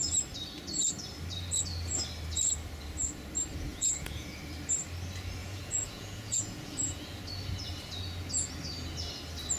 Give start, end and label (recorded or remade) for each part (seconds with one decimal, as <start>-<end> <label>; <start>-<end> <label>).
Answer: 0.0-3.7 recorded; 3.7-4.3 remade; 4.3-5.4 recorded; 5.4-7.2 remade; 7.2-9.6 recorded